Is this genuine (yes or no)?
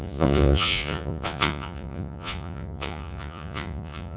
no